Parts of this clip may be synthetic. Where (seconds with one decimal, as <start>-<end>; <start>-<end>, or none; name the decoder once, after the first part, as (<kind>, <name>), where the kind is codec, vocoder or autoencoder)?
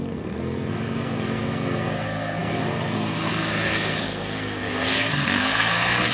0.0-6.1 (codec, SNAC)